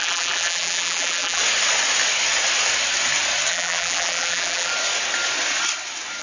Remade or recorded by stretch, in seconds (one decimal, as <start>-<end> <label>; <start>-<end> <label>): 0.0-1.4 remade; 1.4-3.5 recorded; 3.5-4.7 remade; 4.7-6.2 recorded